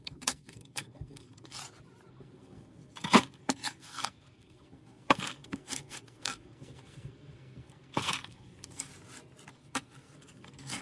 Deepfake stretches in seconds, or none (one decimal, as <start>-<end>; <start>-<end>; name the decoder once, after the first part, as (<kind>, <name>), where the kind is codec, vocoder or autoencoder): 0.0-1.6 (codec, SNAC); 2.1-8.9; 9.5-10.8